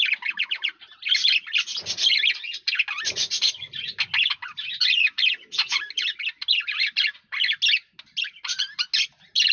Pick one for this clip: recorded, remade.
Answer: recorded